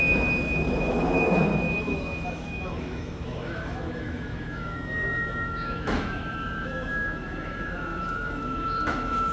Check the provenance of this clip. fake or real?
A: fake